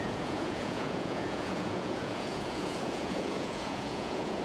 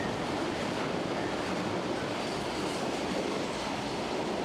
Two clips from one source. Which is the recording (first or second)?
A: second